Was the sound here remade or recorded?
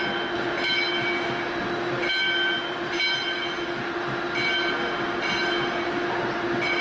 recorded